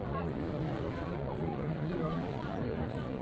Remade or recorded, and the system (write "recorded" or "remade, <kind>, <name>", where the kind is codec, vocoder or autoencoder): remade, vocoder, Vocos